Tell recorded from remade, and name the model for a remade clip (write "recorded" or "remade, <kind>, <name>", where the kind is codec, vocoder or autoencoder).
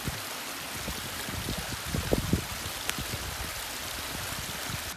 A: recorded